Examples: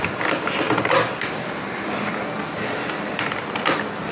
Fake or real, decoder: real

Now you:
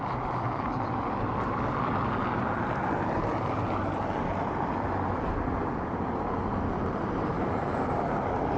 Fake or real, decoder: real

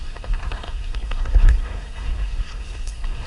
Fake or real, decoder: fake, codec, SNAC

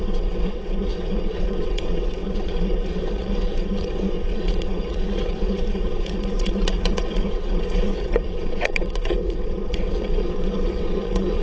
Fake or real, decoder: fake, vocoder, WaveNeXt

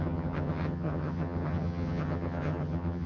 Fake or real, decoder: fake, vocoder, HiFi-GAN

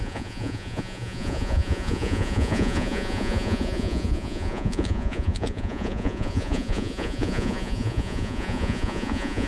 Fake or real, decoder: fake, vocoder, Vocos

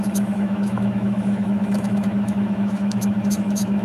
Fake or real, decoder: fake, autoencoder, DAC-VAE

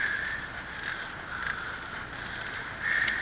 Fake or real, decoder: real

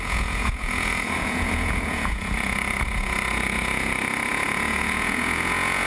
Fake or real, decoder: fake, vocoder, Vocos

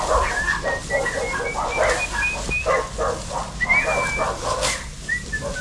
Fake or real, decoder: real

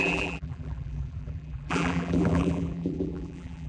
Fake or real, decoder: fake, vocoder, BigVGAN v2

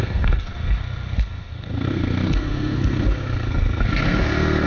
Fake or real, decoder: fake, codec, SNAC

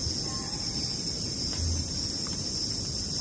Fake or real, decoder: real